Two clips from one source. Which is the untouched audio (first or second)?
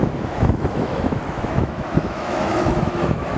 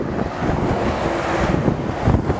second